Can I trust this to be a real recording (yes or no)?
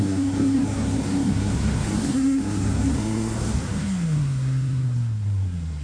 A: no